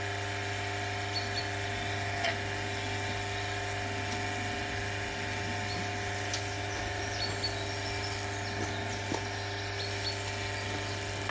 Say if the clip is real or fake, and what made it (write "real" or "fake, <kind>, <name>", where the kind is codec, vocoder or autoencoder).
real